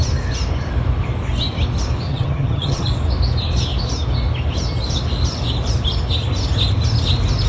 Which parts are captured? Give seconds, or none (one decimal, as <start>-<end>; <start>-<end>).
0.0-2.1; 2.9-7.5

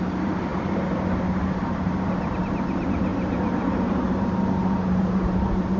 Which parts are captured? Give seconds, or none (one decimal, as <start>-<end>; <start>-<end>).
3.1-3.6

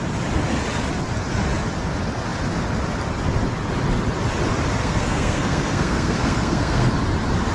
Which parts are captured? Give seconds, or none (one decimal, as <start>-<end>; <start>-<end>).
0.0-4.8; 6.9-7.5

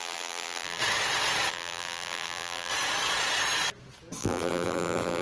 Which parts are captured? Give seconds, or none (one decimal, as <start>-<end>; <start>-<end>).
0.8-1.5; 2.7-4.2

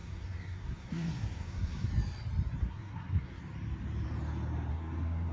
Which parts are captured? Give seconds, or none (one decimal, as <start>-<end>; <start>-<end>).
1.9-2.6; 3.4-4.7

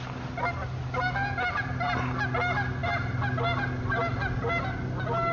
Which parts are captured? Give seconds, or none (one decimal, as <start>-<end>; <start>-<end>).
0.0-5.3

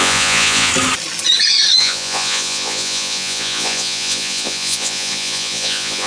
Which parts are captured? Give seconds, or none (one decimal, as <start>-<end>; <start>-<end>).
0.7-1.8